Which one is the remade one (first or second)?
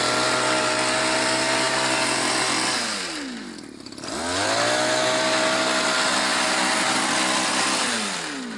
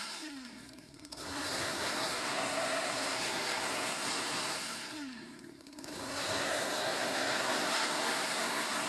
second